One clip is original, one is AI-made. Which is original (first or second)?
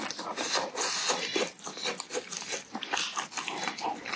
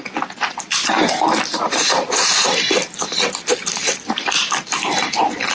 first